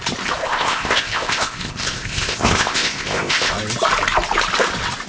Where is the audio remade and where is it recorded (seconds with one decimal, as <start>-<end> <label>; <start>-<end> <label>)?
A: 0.0-0.4 recorded; 0.4-3.5 remade; 3.5-5.1 recorded